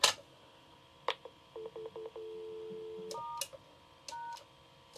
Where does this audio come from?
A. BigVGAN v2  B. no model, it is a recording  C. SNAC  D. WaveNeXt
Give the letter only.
B